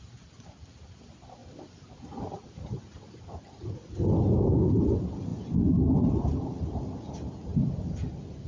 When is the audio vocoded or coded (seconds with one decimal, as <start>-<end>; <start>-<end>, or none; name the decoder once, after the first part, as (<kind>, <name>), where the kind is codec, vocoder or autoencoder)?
none